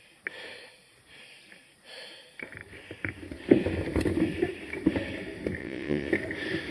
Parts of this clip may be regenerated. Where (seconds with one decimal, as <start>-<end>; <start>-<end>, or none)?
5.6-6.1